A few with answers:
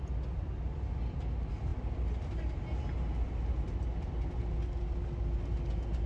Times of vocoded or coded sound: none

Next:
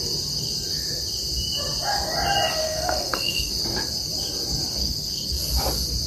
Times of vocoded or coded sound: 2.6-3.5; 4.8-5.4

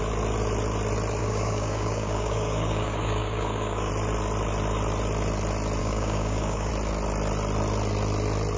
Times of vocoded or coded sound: 1.2-3.9; 5.8-6.7

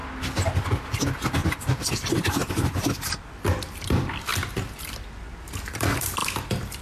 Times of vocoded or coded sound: 0.7-1.4; 2.5-4.3; 5.6-6.2

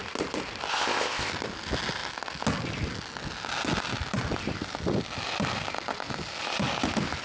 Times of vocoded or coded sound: 0.7-1.3

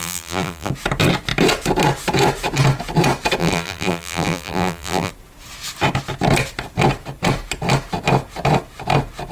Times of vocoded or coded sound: 0.0-0.7; 3.4-5.1

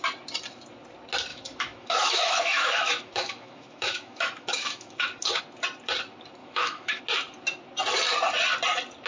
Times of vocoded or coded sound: 1.3-5.4; 6.4-7.0